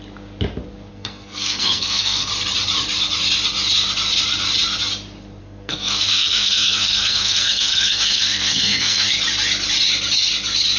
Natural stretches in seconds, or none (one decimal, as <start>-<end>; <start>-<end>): 0.0-0.9; 2.3-5.4; 9.1-10.8